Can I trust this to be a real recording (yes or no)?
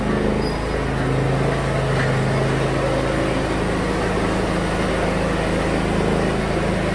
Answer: yes